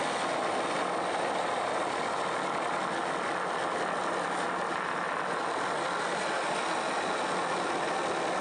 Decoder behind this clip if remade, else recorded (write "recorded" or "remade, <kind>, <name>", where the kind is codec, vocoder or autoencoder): recorded